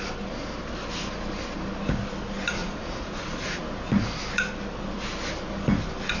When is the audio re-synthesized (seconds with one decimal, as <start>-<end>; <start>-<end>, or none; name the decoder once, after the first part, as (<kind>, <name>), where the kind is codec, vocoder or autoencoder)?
2.6-3.6 (vocoder, Vocos)